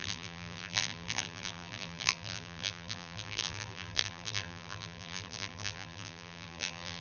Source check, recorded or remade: remade